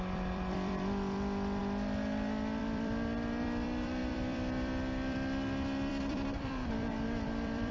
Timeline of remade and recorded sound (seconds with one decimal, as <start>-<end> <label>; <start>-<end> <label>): 0.0-1.6 remade; 1.6-2.6 recorded; 2.6-7.7 remade